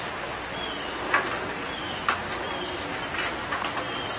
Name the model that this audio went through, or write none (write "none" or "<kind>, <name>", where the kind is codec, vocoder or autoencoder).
none